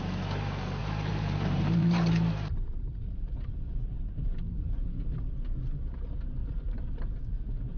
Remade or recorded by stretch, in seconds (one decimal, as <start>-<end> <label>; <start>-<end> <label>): 0.0-0.8 recorded; 0.8-5.2 remade; 5.2-6.4 recorded; 6.4-7.8 remade